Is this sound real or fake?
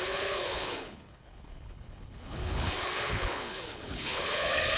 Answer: fake